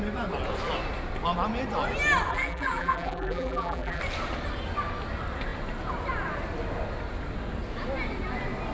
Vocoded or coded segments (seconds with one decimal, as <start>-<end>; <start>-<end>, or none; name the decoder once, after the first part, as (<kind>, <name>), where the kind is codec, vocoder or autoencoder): 2.3-4.0 (vocoder, BigVGAN v2)